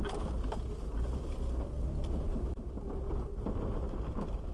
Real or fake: real